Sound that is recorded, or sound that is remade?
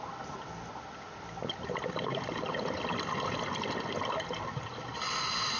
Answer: recorded